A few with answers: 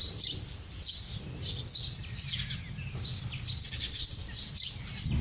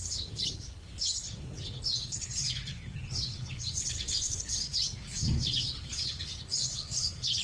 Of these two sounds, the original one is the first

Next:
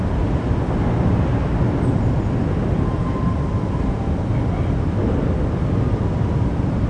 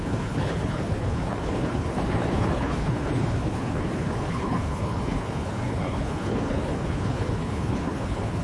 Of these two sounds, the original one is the first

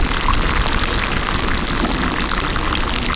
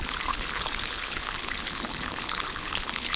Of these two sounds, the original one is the first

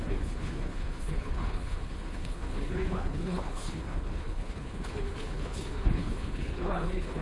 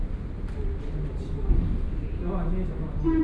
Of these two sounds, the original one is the second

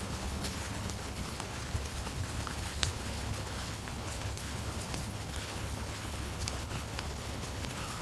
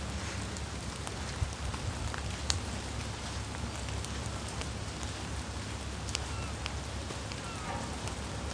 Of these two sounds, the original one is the second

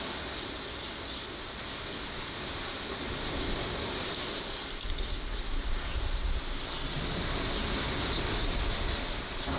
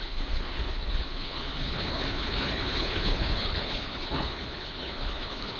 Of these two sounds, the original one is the first